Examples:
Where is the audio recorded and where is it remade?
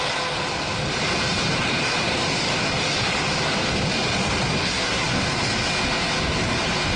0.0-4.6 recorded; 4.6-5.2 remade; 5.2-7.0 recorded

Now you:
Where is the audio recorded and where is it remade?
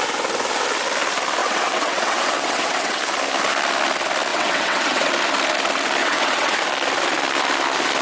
0.0-1.4 recorded; 1.4-3.0 remade; 3.0-4.3 recorded; 4.3-5.1 remade; 5.1-6.0 recorded; 6.0-6.6 remade; 6.6-8.0 recorded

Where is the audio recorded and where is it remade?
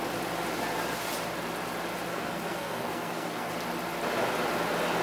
0.0-2.1 recorded; 2.1-3.5 remade; 3.5-5.0 recorded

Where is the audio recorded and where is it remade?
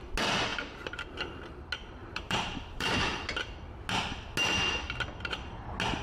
0.0-0.5 recorded; 0.5-1.0 remade; 1.0-2.0 recorded; 2.0-2.9 remade; 2.9-6.0 recorded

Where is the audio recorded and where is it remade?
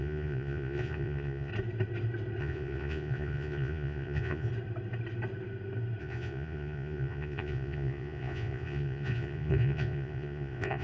0.0-1.5 remade; 1.5-2.4 recorded; 2.4-4.5 remade; 4.5-6.0 recorded; 6.0-10.8 remade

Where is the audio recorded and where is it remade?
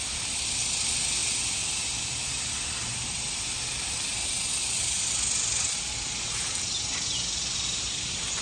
0.0-8.4 recorded